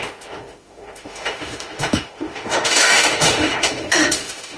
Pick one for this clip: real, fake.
fake